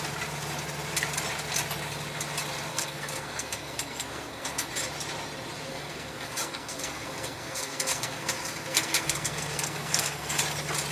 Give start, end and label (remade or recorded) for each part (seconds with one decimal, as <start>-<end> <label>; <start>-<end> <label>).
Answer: 0.0-2.7 recorded; 2.7-4.7 remade; 4.7-5.7 recorded; 5.7-10.4 remade; 10.4-10.9 recorded